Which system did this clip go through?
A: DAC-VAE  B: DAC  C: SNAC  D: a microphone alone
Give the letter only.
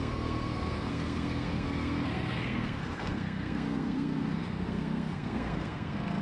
C